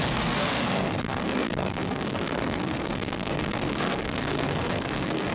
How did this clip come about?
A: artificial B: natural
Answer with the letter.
A